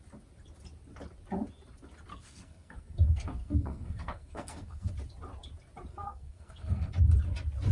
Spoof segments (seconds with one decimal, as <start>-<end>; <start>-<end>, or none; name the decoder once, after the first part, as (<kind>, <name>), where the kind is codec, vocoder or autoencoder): 2.1-4.9 (codec, SNAC); 5.9-6.9